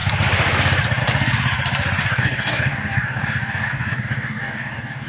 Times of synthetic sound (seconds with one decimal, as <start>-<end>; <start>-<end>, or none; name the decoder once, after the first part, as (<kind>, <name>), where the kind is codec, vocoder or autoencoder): 2.0-5.1 (codec, DAC)